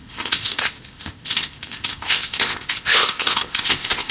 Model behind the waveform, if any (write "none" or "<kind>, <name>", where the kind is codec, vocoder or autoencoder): codec, ZipCodec